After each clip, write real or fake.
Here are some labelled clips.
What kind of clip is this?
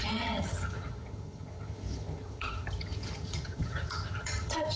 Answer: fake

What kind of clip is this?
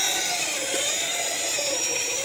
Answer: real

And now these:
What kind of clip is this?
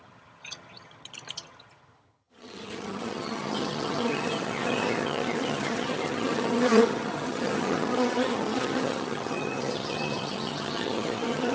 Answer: fake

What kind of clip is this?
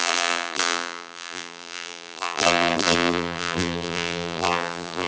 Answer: fake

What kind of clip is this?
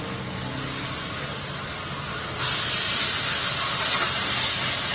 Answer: real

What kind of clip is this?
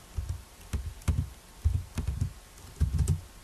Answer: real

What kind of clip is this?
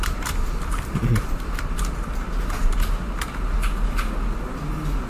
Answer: real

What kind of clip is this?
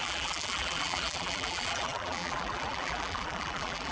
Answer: fake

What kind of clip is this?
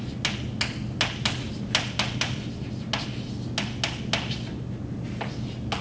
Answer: real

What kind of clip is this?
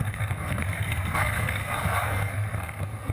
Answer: fake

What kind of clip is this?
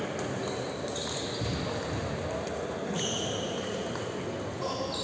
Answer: real